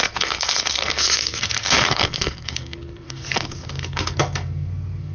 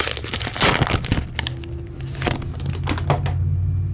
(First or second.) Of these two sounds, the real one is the second